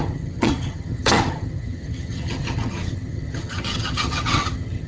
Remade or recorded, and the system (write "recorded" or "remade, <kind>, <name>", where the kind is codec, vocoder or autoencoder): remade, vocoder, HiFi-GAN